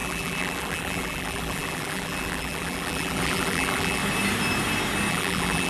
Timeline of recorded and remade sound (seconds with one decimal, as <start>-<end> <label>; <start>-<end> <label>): 0.0-4.0 remade; 4.0-5.1 recorded; 5.1-5.7 remade